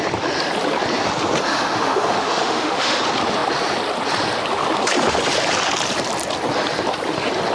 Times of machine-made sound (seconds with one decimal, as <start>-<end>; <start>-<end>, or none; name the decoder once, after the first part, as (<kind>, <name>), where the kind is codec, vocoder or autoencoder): 1.5-3.0 (autoencoder, DAC-VAE)

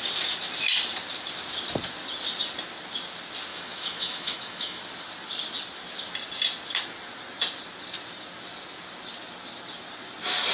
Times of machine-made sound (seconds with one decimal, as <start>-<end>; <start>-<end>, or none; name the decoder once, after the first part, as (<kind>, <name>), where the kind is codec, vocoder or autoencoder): 3.5-4.8 (autoencoder, DAC-VAE)

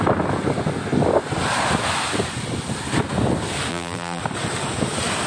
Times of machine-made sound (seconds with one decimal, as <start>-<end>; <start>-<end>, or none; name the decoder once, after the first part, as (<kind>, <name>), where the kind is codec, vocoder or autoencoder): 3.7-4.2 (vocoder, BigVGAN v2)

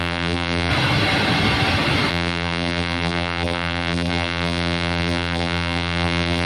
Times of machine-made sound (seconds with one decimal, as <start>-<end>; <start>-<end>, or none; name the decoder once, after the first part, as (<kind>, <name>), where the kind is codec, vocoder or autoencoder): 0.0-0.7 (vocoder, BigVGAN v2); 2.1-6.5